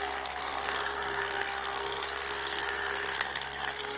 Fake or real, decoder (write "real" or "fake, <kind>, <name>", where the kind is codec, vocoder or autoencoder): fake, codec, SNAC